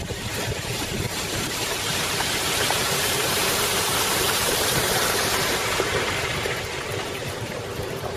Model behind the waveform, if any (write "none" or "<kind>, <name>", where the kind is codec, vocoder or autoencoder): vocoder, BigVGAN v2